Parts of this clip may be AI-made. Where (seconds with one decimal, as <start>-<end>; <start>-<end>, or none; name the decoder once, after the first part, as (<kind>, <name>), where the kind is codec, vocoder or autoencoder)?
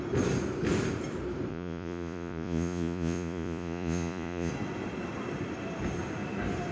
1.5-4.5 (vocoder, Vocos)